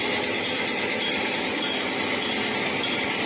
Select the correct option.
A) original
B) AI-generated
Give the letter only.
A